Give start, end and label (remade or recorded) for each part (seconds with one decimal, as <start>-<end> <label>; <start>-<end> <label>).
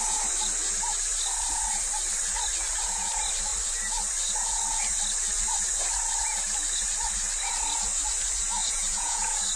0.0-8.6 recorded; 8.6-9.2 remade; 9.2-9.6 recorded